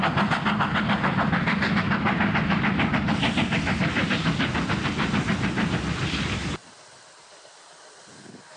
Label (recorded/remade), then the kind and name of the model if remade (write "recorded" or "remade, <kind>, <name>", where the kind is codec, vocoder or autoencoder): recorded